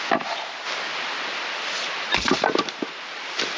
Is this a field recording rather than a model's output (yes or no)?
yes